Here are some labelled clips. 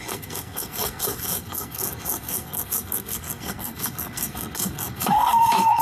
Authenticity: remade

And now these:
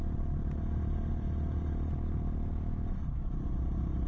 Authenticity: recorded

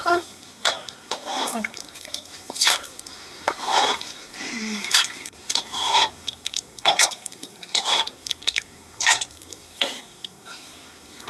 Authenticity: remade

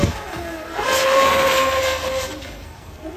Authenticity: remade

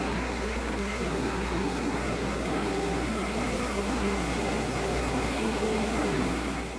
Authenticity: remade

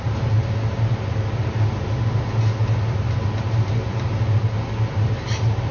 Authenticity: recorded